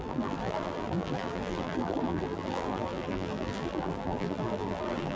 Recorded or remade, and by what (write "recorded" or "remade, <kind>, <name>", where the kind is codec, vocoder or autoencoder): remade, vocoder, BigVGAN v2